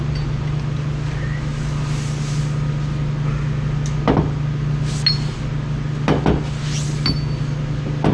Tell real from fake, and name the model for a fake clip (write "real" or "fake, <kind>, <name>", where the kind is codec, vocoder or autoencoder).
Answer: real